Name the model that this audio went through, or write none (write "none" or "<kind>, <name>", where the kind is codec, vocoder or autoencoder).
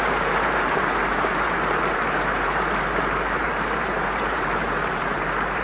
vocoder, BigVGAN v2